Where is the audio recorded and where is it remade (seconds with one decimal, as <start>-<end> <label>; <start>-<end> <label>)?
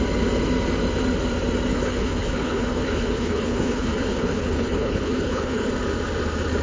0.0-1.7 recorded; 1.7-5.7 remade; 5.7-6.6 recorded